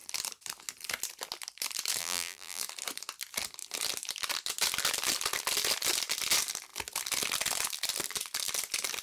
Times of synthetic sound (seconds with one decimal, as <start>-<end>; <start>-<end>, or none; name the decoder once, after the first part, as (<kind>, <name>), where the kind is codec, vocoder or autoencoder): 2.0-2.6 (vocoder, BigVGAN v2)